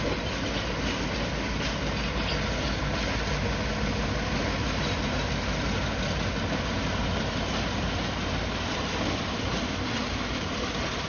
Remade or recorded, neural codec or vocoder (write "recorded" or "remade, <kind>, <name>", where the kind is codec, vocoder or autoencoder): recorded